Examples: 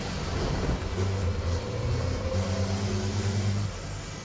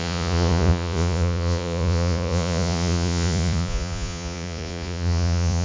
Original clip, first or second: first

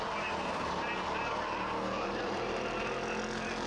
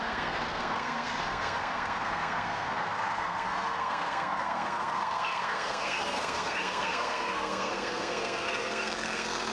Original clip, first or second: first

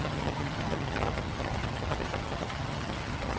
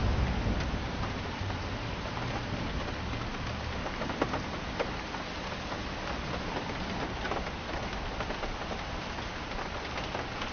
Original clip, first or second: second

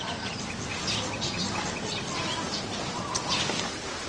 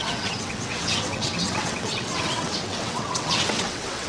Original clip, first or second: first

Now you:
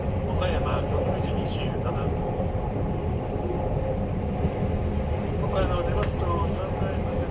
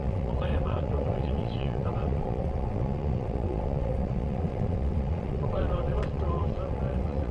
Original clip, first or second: first